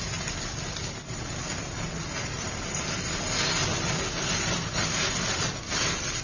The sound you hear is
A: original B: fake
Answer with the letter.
A